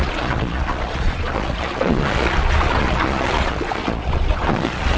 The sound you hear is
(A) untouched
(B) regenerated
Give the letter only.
B